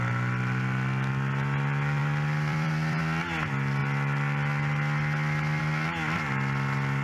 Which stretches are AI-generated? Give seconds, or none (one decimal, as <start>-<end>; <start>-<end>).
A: 2.0-3.0